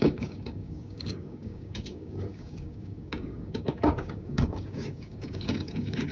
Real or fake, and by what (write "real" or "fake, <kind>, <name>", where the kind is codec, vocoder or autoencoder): fake, codec, DAC